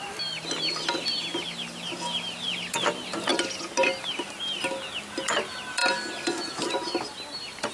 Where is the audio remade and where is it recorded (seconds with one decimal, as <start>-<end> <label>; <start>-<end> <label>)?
0.0-7.7 recorded